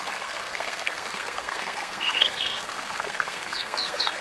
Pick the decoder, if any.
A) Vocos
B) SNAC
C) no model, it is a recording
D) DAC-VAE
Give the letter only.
B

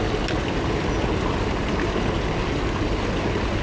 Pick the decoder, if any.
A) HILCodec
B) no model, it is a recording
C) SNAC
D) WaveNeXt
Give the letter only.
B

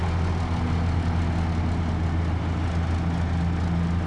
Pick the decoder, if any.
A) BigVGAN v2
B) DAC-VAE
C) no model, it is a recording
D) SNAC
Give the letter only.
C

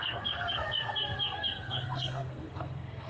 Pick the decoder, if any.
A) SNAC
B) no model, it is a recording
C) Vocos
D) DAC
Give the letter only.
A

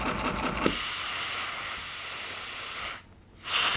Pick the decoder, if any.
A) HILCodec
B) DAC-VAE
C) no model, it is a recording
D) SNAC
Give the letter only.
C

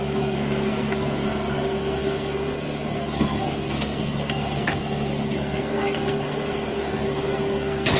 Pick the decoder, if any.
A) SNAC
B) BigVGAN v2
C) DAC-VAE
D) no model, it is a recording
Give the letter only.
A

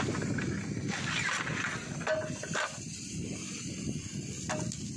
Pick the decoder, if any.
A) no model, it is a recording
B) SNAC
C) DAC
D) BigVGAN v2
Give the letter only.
A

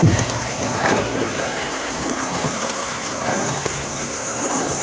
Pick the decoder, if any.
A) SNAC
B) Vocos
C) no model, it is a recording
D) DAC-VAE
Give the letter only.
A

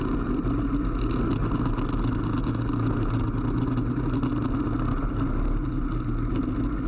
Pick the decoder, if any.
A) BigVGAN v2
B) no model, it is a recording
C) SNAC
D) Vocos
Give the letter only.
B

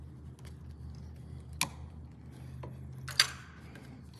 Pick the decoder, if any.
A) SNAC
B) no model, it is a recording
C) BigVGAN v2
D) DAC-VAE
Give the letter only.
B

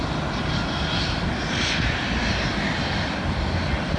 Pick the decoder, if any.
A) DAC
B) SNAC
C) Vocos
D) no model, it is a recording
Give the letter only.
D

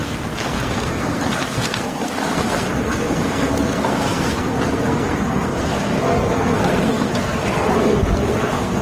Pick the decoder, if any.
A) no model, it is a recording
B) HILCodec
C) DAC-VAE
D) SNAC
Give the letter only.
D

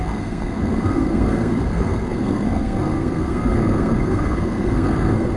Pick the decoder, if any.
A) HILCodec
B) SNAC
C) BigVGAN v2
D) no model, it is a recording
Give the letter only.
B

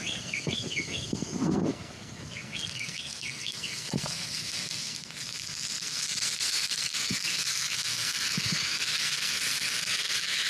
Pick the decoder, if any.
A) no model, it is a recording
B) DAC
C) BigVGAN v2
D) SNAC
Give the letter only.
D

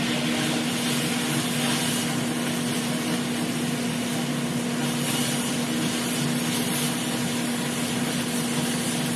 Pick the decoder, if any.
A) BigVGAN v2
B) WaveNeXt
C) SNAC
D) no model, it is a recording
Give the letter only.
D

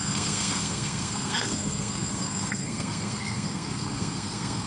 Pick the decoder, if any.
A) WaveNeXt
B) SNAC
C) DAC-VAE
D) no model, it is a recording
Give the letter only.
B